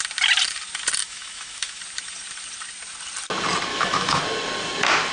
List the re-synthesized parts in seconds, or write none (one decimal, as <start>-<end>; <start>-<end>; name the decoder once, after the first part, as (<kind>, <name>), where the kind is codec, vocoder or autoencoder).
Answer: 1.0-1.8 (autoencoder, DAC-VAE); 3.7-4.2